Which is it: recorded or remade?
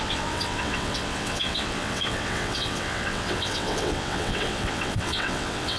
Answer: remade